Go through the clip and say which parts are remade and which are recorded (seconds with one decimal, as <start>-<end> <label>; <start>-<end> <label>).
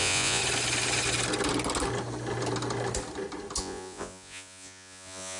0.0-0.4 remade; 0.4-3.6 recorded; 3.6-5.4 remade